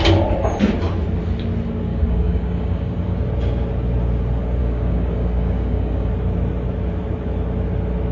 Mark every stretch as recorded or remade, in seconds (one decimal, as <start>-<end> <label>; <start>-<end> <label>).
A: 0.0-1.9 recorded; 1.9-2.9 remade; 2.9-4.6 recorded; 4.6-6.1 remade; 6.1-8.1 recorded